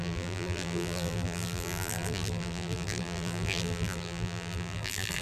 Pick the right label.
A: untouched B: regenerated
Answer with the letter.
B